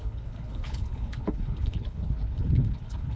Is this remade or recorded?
remade